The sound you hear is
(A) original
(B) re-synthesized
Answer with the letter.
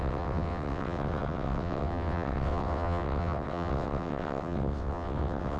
B